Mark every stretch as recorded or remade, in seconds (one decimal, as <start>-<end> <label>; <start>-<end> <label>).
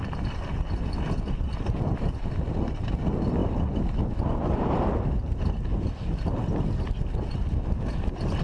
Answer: 0.0-8.4 recorded